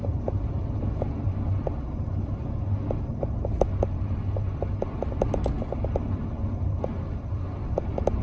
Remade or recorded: recorded